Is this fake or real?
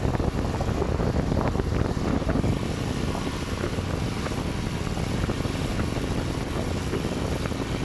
real